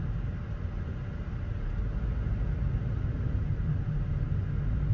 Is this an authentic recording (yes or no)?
yes